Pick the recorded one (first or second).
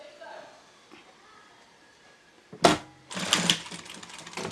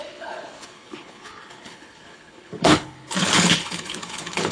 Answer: first